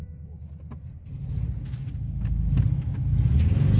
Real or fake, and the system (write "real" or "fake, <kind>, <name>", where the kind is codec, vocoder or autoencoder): real